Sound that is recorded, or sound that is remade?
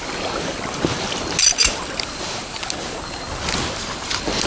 recorded